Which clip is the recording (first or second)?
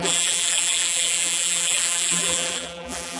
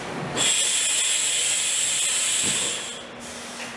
second